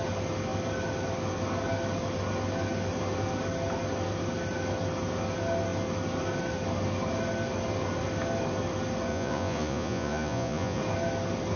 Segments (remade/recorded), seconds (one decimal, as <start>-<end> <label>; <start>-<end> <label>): 0.0-9.1 recorded; 9.1-10.8 remade; 10.8-11.6 recorded

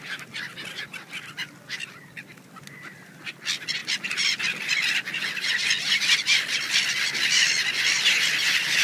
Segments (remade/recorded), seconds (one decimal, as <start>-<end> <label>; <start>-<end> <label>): 0.0-3.8 recorded; 3.8-4.4 remade; 4.4-8.8 recorded

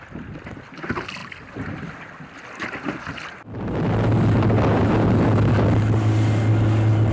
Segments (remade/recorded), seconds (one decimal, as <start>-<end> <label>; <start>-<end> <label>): 0.0-7.1 recorded

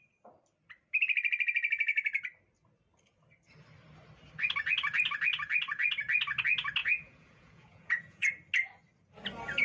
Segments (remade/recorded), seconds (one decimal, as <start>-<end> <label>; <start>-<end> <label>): 0.0-6.8 recorded; 6.8-8.3 remade; 8.3-9.6 recorded

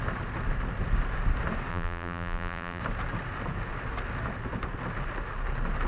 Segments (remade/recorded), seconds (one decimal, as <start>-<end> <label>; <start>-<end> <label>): 0.0-1.7 recorded; 1.7-2.8 remade; 2.8-5.9 recorded

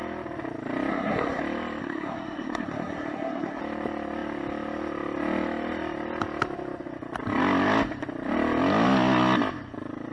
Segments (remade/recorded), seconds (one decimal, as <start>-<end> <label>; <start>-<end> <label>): 0.0-0.9 recorded; 0.9-1.4 remade; 1.4-1.8 recorded; 1.8-3.6 remade; 3.6-10.1 recorded

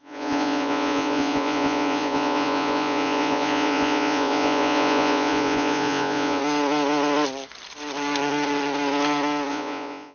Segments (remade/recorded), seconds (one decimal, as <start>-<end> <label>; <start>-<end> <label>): 0.0-6.4 remade; 6.4-9.5 recorded; 9.5-10.1 remade

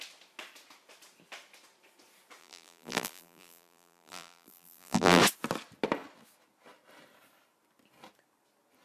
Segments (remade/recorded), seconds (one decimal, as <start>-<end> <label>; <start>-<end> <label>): 0.0-2.4 recorded; 2.4-5.2 remade; 5.2-8.8 recorded